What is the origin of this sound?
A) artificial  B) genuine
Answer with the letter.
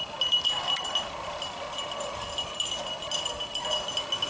B